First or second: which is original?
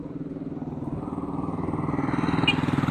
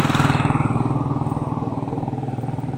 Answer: first